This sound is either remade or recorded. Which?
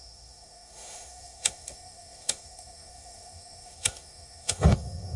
remade